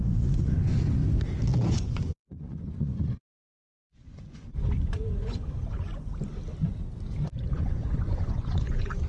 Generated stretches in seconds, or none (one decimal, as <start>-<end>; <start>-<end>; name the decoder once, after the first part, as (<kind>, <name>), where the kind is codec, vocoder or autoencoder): 0.0-1.0 (vocoder, Vocos); 1.7-6.1; 7.5-9.1